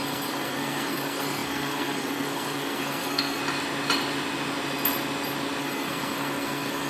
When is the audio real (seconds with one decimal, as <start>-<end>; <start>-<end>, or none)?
3.4-5.6